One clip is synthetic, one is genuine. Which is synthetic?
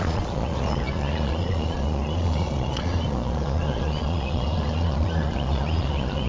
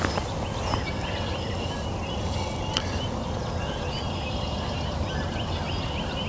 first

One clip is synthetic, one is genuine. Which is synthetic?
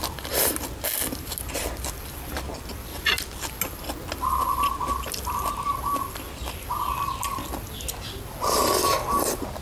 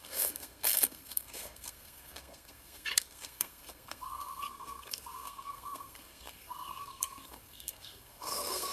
second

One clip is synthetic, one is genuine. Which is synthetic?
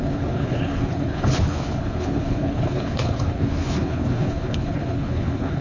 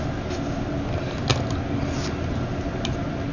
first